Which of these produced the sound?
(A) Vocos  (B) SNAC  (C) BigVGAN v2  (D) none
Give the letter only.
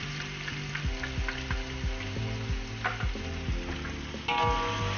D